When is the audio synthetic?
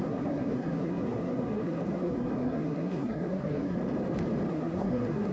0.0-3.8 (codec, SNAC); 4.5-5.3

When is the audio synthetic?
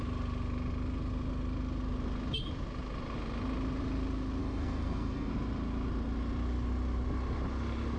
4.4-5.3 (codec, SNAC)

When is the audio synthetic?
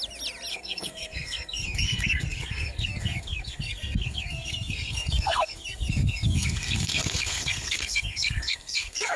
0.5-9.2 (codec, SNAC)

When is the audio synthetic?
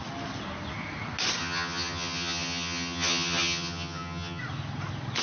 1.4-4.4 (vocoder, HiFi-GAN)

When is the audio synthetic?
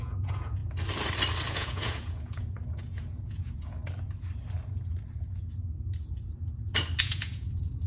0.0-0.6 (vocoder, Vocos); 1.5-3.8; 7.0-7.9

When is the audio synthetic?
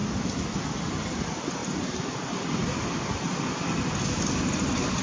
none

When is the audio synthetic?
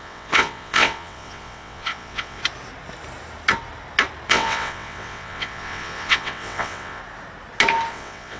0.0-2.4 (vocoder, WaveNeXt); 4.3-7.0; 7.9-8.4